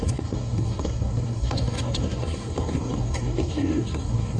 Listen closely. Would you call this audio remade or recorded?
remade